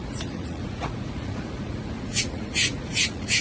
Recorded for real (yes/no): no